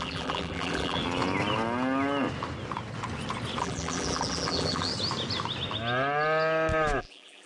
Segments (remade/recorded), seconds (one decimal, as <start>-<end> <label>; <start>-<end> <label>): 0.0-1.0 remade; 1.0-3.6 recorded; 3.6-4.9 remade; 4.9-7.0 recorded; 7.0-7.5 remade